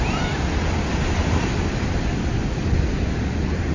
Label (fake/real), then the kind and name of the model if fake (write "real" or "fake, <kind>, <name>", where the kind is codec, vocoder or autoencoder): real